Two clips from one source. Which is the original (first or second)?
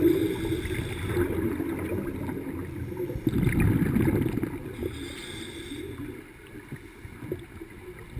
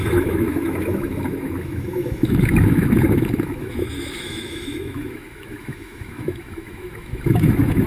first